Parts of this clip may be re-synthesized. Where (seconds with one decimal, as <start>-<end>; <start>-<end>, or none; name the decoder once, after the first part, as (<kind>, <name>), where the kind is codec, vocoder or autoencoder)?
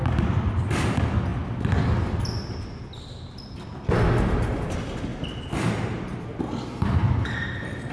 5.1-7.3 (vocoder, BigVGAN v2)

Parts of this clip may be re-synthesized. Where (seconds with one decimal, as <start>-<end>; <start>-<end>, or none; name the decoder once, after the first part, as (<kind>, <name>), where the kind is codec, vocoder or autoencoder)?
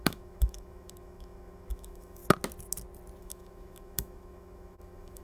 0.0-2.2 (autoencoder, DAC-VAE); 3.2-5.2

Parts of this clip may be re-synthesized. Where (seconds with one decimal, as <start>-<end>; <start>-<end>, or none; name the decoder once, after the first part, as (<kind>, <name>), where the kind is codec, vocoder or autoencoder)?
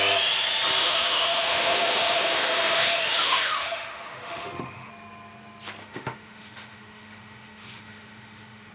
0.8-4.9 (autoencoder, DAC-VAE); 5.8-8.7